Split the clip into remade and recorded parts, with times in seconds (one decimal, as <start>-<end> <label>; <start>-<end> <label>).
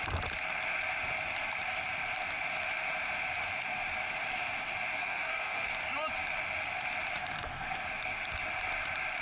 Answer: 0.0-5.0 recorded; 5.0-5.7 remade; 5.7-9.2 recorded